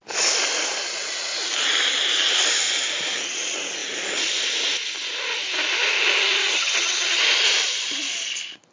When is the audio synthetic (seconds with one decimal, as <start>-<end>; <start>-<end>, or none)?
6.4-7.2